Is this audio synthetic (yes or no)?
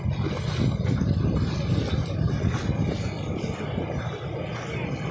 no